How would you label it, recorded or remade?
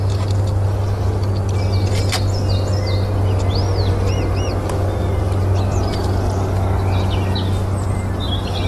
recorded